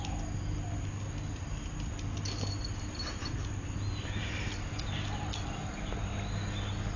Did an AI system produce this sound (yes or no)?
no